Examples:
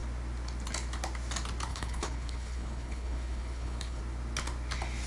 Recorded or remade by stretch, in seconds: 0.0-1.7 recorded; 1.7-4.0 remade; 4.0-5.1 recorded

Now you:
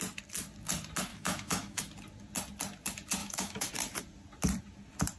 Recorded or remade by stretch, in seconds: 0.0-1.1 recorded; 1.1-1.8 remade; 1.8-3.2 recorded; 3.2-3.7 remade; 3.7-5.2 recorded

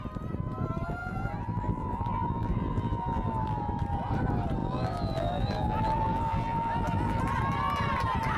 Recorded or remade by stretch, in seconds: 0.0-1.0 recorded; 1.0-3.6 remade; 3.6-4.6 recorded; 4.6-7.2 remade; 7.2-8.4 recorded